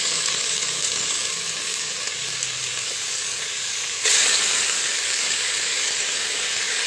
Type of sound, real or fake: fake